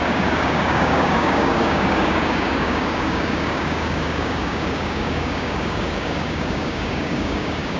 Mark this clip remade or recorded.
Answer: remade